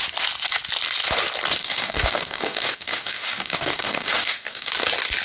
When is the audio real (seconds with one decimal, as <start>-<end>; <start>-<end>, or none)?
0.0-1.6; 4.7-5.2